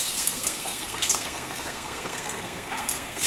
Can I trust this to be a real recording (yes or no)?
no